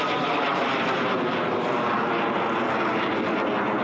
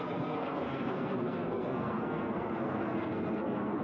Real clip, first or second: first